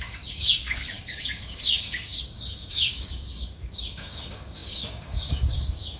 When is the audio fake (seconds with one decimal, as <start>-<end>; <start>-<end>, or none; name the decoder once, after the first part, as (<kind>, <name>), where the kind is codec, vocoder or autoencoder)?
0.0-6.0 (codec, DAC)

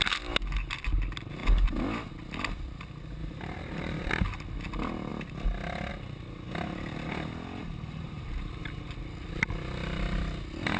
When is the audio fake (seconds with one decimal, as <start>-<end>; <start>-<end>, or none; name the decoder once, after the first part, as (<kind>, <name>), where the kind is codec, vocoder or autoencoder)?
3.2-4.1 (vocoder, BigVGAN v2); 7.6-8.5